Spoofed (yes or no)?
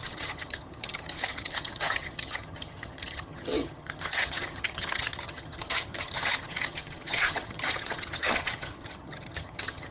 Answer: yes